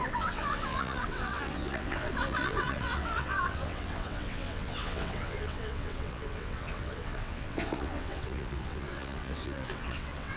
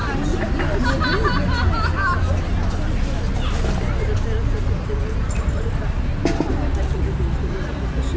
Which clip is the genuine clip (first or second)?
second